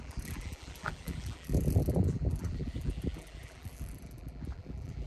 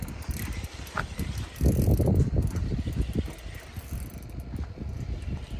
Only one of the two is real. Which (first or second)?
second